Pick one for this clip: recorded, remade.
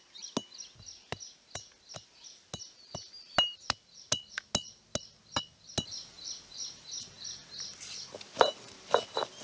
recorded